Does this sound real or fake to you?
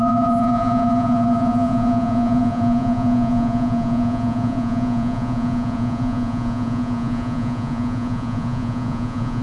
fake